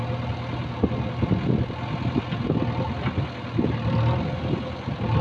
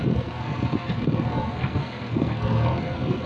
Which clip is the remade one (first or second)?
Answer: second